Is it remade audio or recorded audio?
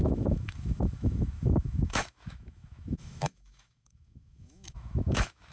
remade